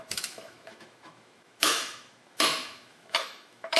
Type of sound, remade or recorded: remade